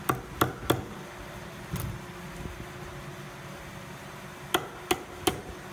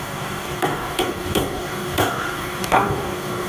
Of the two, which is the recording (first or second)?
first